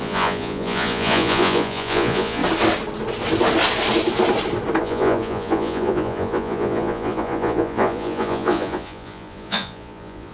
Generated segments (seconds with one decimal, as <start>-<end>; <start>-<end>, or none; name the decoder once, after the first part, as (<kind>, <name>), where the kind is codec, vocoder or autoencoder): 0.0-2.4 (vocoder, Vocos); 4.8-10.3